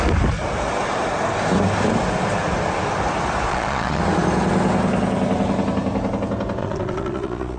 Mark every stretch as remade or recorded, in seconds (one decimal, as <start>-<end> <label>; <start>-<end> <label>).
0.0-3.5 recorded; 3.5-4.0 remade; 4.0-6.6 recorded; 6.6-7.6 remade